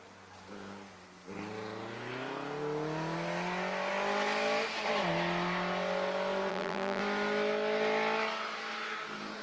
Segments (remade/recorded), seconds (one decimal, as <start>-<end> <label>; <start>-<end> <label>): 0.0-6.5 recorded; 6.5-7.0 remade; 7.0-9.4 recorded